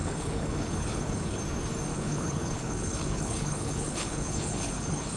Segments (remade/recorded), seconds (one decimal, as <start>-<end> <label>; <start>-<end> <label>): 0.0-1.4 remade; 1.4-1.9 recorded; 1.9-5.2 remade